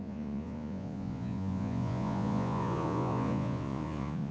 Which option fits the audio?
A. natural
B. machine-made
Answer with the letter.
B